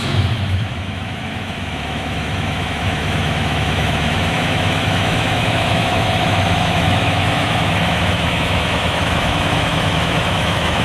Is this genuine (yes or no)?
no